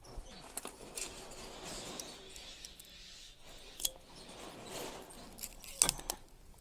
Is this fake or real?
real